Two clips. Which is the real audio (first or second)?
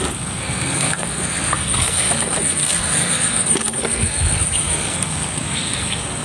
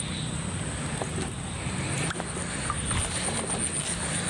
second